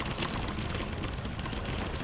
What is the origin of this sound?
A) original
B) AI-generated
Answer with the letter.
A